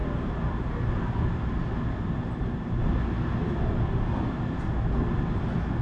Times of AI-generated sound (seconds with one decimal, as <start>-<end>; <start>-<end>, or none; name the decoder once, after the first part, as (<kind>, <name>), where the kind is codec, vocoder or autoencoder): none